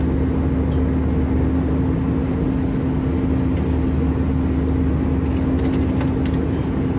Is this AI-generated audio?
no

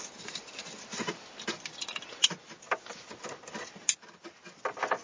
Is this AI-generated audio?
no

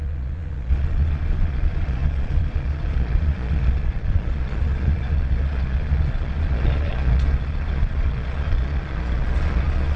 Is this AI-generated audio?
yes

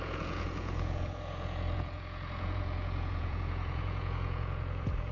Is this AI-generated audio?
yes